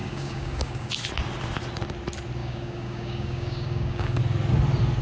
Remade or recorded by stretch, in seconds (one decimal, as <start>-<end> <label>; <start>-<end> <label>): 0.0-0.9 remade; 0.9-2.4 recorded; 2.4-4.2 remade; 4.2-5.0 recorded